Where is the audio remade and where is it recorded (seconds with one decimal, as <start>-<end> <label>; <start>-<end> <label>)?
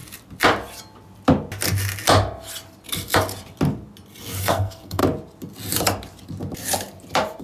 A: 0.0-4.4 recorded; 4.4-5.0 remade; 5.0-7.4 recorded